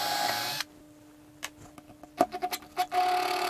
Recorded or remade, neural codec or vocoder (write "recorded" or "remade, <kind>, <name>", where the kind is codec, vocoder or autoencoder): recorded